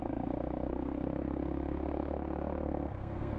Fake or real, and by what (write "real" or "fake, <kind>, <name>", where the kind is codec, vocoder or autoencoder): fake, codec, SNAC